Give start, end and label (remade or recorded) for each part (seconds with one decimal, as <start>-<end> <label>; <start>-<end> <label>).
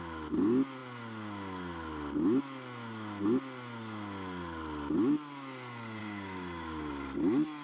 0.0-6.0 recorded; 6.0-6.9 remade; 6.9-7.6 recorded